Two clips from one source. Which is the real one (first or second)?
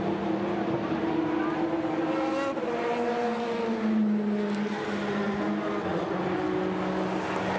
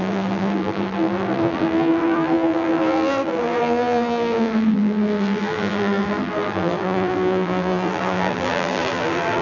first